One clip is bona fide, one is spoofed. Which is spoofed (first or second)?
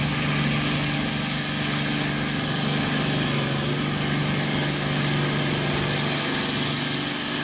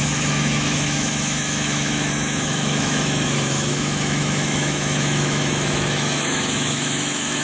second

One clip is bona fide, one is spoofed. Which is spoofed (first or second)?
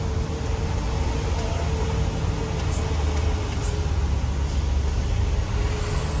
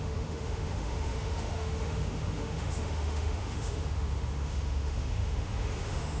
second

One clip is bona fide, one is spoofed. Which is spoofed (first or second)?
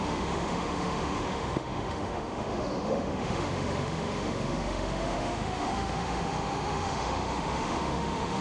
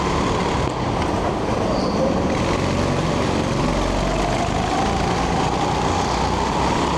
first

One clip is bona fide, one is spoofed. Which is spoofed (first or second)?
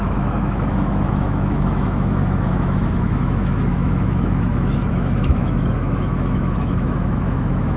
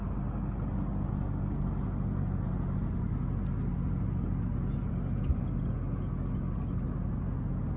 first